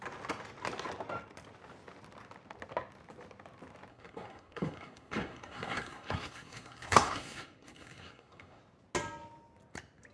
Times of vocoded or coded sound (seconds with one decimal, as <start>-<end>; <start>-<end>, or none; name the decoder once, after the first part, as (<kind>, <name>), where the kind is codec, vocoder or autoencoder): 3.9-8.6 (codec, SNAC)